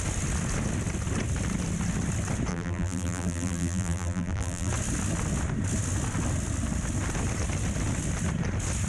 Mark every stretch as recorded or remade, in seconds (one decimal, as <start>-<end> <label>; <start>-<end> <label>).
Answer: 0.0-2.5 recorded; 2.5-4.7 remade; 4.7-8.9 recorded